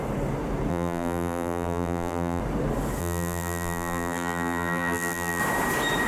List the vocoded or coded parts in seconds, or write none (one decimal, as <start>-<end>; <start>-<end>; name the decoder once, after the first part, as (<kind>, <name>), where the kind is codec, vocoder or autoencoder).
0.7-2.4 (vocoder, BigVGAN v2); 3.0-5.4